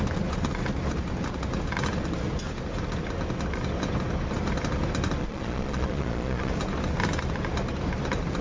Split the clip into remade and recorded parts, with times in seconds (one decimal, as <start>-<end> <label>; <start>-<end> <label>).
0.0-5.2 recorded; 5.2-6.5 remade; 6.5-8.4 recorded